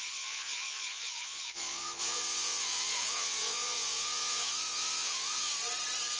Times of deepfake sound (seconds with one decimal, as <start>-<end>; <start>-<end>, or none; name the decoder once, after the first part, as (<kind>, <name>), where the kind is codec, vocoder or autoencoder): 0.0-5.5 (vocoder, Vocos)